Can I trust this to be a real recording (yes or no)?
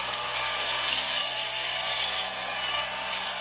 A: no